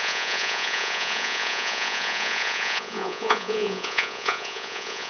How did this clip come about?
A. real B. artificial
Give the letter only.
B